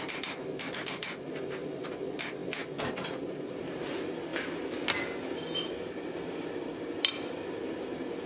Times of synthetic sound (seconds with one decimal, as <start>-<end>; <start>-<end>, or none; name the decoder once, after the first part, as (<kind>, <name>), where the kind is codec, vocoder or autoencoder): none